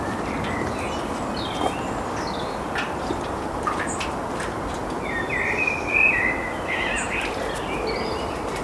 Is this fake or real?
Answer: real